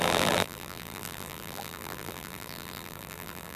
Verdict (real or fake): fake